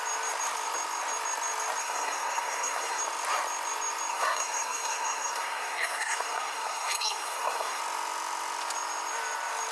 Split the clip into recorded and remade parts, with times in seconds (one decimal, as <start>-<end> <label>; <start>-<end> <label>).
0.0-1.8 recorded; 1.8-3.0 remade; 3.0-4.1 recorded; 4.1-7.8 remade; 7.8-9.7 recorded